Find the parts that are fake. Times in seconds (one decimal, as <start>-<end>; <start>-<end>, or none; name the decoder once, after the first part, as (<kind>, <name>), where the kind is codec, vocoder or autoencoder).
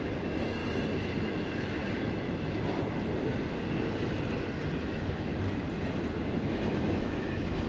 0.0-0.6 (autoencoder, DAC-VAE); 1.3-1.8; 4.8-5.3; 6.1-7.7